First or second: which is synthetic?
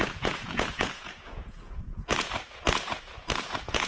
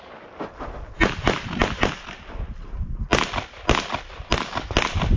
first